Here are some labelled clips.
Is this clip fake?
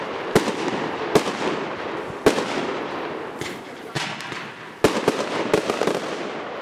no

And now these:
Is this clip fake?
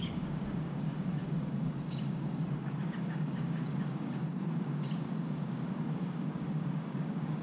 yes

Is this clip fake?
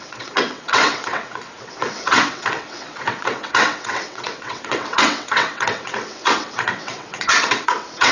yes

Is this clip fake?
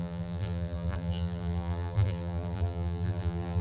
yes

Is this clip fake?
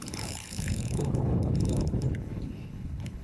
yes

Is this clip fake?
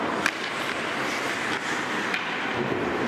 yes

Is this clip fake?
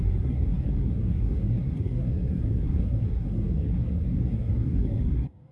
yes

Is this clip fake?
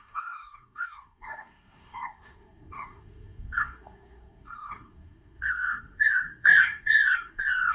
yes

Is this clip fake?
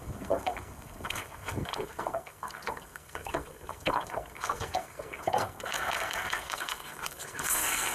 yes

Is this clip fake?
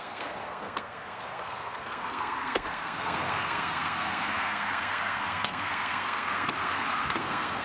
yes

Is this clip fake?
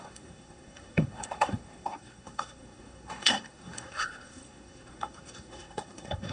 yes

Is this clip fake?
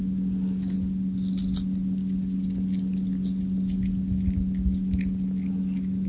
no